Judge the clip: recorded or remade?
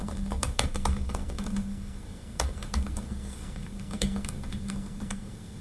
remade